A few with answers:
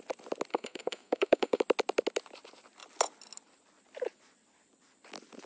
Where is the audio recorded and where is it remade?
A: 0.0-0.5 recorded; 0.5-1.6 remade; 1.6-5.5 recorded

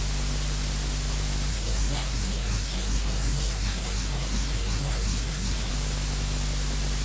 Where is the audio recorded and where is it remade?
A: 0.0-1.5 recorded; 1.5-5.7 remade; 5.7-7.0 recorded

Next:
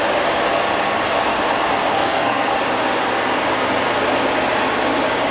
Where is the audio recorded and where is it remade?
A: 0.0-2.0 recorded; 2.0-2.5 remade; 2.5-5.3 recorded

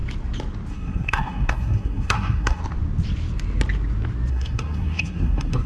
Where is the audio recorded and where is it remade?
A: 0.0-0.7 recorded; 0.7-2.6 remade; 2.6-4.3 recorded; 4.3-5.7 remade